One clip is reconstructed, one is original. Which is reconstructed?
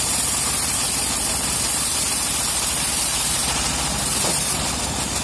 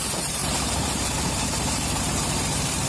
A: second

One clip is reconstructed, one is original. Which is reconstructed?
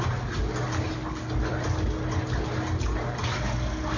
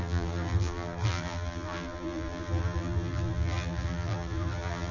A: second